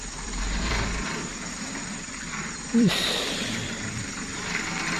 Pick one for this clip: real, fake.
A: fake